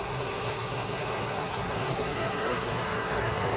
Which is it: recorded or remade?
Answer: remade